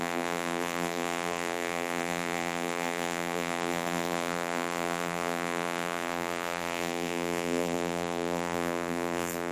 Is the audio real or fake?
fake